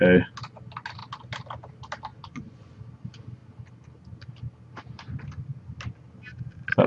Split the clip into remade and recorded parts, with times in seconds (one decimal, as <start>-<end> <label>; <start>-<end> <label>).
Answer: 0.0-2.1 recorded; 2.1-2.8 remade; 2.8-6.9 recorded